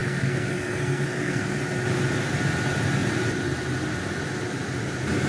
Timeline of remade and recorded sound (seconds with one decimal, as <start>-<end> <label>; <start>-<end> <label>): 0.0-1.6 remade; 1.6-5.3 recorded